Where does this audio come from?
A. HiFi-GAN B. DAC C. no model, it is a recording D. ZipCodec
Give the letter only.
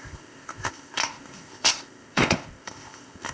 D